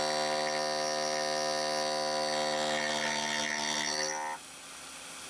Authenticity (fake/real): real